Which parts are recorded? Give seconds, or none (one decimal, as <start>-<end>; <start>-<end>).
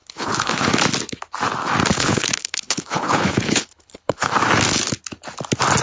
0.7-1.9; 4.3-5.8